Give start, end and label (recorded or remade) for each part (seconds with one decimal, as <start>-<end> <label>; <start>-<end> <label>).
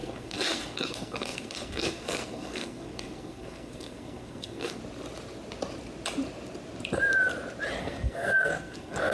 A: 0.0-4.8 remade; 4.8-7.8 recorded; 7.8-9.1 remade